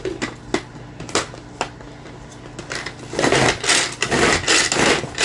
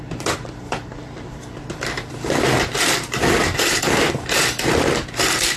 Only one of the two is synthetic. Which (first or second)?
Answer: second